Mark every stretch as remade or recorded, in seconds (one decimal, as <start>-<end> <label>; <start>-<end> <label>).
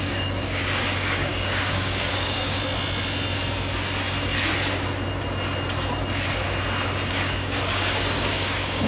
0.0-2.6 remade; 2.6-7.1 recorded; 7.1-8.9 remade